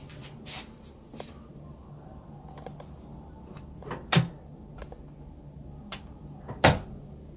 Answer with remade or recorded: recorded